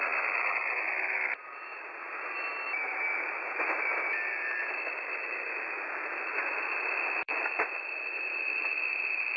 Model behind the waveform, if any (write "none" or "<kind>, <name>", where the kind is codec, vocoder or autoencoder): vocoder, BigVGAN v2